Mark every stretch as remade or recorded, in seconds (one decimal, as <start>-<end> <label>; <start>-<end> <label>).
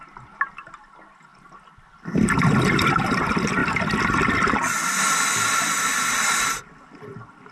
0.0-1.3 recorded; 1.3-2.9 remade; 2.9-3.6 recorded; 3.6-4.3 remade; 4.3-7.5 recorded